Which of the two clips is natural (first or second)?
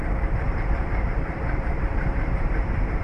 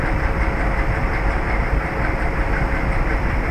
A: second